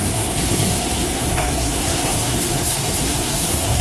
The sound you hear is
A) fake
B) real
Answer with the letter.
A